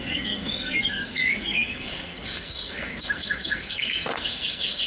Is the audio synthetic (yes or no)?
yes